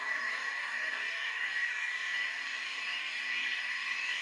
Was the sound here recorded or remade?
remade